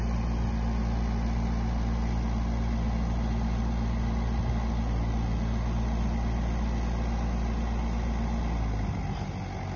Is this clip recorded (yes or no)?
yes